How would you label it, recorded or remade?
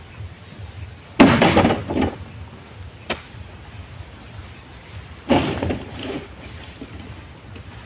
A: recorded